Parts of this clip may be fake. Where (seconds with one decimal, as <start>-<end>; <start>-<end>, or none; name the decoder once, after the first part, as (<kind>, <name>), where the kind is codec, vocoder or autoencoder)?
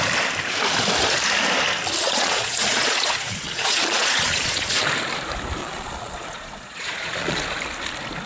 2.0-4.9 (vocoder, Vocos); 5.6-7.4